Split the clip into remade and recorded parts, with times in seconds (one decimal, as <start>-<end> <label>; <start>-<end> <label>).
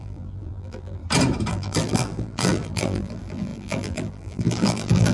0.0-1.0 remade; 1.0-1.5 recorded; 1.5-5.1 remade